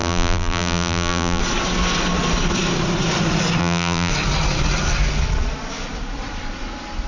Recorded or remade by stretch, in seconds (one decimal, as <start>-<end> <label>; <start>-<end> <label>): 0.0-1.4 remade; 1.4-3.6 recorded; 3.6-4.1 remade; 4.1-7.1 recorded